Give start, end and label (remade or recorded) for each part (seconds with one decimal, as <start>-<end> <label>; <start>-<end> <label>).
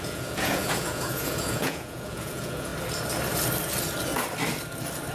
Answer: 0.0-2.7 remade; 2.7-5.1 recorded